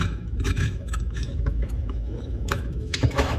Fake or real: fake